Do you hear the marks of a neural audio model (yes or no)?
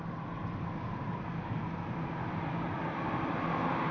no